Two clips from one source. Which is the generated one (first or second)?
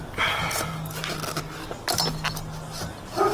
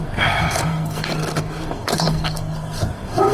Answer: second